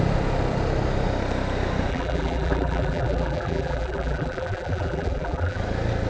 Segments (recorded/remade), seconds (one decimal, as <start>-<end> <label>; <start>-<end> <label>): 0.0-1.9 recorded; 1.9-5.6 remade; 5.6-6.1 recorded